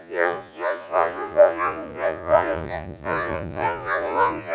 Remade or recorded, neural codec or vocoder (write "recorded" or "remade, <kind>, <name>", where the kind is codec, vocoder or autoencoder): remade, vocoder, Vocos